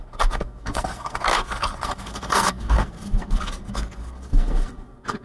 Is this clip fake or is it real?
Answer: fake